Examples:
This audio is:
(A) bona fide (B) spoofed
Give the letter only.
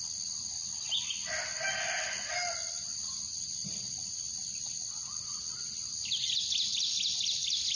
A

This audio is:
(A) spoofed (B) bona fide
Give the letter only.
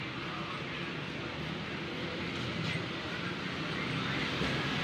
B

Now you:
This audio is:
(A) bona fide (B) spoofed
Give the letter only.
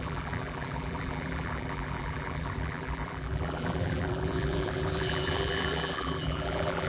B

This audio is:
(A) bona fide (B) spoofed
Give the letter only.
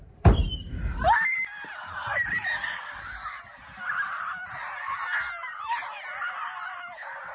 A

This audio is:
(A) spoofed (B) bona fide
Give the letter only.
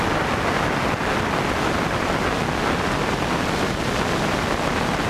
B